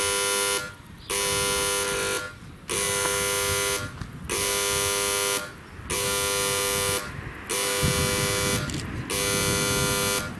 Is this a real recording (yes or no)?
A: yes